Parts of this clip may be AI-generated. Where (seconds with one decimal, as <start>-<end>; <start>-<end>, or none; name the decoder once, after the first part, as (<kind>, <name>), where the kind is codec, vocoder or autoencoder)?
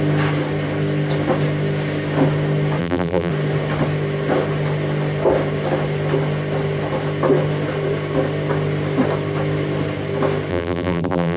2.8-3.3 (vocoder, BigVGAN v2); 10.5-11.4